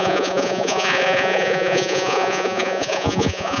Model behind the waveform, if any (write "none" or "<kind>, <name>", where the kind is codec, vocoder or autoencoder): vocoder, Vocos